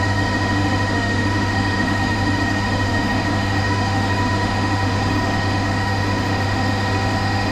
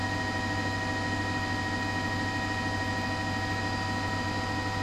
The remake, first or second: first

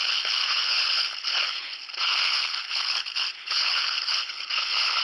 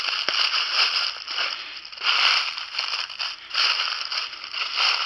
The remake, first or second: first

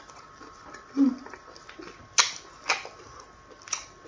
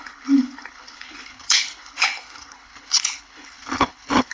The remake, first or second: second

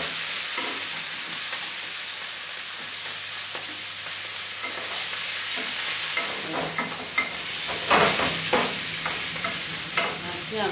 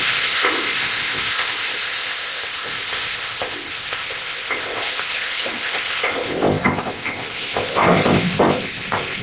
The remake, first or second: second